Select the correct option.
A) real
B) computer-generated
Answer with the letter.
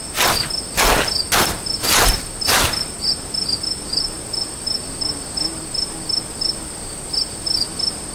A